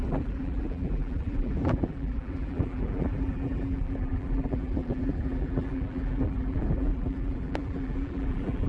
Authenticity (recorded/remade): remade